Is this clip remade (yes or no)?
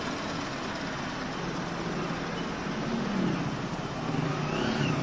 no